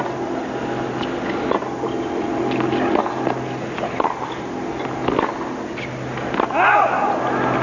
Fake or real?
real